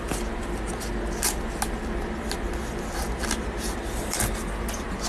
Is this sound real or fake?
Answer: real